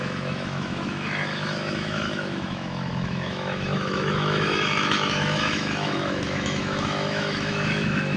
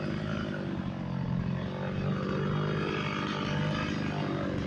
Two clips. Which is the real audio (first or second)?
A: second